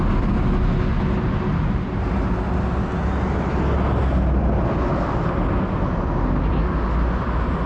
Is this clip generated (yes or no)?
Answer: no